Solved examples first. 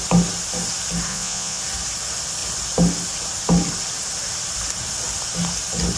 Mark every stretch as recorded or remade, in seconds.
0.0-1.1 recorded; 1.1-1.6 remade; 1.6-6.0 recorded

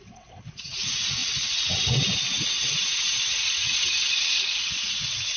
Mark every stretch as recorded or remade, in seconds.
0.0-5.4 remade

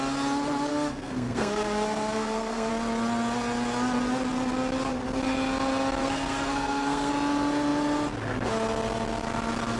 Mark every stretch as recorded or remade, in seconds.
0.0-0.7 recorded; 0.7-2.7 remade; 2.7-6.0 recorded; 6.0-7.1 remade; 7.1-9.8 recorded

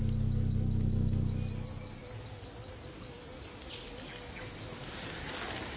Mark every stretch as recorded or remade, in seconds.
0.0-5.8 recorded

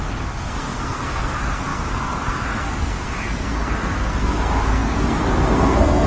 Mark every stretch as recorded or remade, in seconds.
0.0-6.1 remade

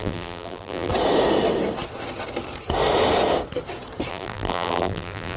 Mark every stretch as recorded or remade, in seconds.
0.0-0.9 remade; 0.9-4.1 recorded; 4.1-5.4 remade